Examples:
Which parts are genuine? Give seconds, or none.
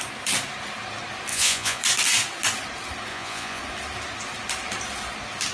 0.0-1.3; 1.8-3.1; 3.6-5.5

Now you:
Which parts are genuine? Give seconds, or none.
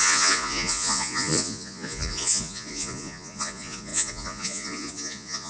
none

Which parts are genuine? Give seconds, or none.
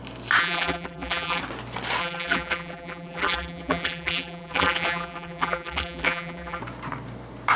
0.0-0.4; 1.4-2.0; 6.6-7.6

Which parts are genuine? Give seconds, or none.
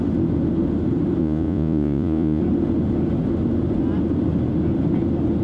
0.0-1.2; 2.4-5.4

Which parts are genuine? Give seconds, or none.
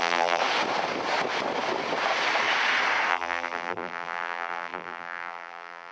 0.4-3.1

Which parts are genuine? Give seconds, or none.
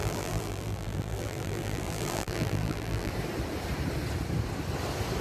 3.1-5.2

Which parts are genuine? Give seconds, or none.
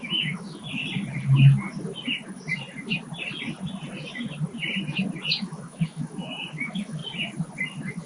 0.8-5.4; 7.0-8.1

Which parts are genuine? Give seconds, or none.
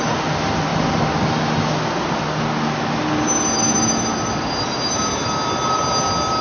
0.0-6.4